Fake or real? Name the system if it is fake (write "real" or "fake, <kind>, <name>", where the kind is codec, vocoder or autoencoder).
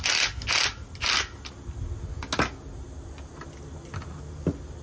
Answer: real